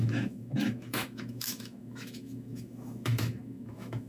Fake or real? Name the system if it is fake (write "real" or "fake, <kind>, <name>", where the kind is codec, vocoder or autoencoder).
fake, autoencoder, DAC-VAE